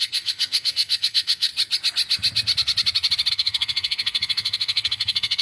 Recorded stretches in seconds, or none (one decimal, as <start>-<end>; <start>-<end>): 1.5-3.3